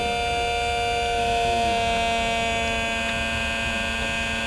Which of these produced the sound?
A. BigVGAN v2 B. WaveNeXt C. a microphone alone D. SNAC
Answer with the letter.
C